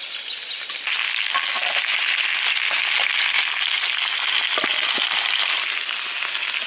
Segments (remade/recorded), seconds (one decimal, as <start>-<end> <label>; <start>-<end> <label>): 0.0-6.7 recorded